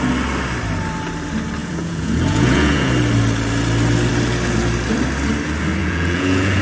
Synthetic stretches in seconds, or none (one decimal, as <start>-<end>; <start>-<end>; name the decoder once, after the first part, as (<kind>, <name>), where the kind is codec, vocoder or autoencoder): 1.6-2.9 (vocoder, Vocos); 5.8-6.6

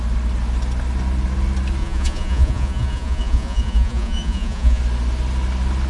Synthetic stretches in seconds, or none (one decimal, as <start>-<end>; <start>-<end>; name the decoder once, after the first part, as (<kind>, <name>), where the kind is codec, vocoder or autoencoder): 1.8-4.8 (vocoder, Vocos)

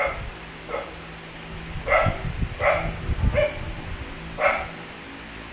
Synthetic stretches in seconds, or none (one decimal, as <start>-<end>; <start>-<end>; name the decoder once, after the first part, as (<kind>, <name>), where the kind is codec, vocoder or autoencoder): none

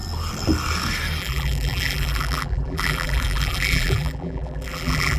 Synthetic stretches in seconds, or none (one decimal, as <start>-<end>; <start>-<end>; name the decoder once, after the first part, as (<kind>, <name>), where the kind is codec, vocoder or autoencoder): 1.2-5.2 (vocoder, BigVGAN v2)

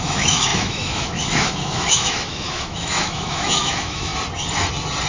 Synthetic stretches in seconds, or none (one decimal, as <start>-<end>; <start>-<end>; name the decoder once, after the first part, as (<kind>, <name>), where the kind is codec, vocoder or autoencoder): 0.0-4.1 (autoencoder, DAC-VAE)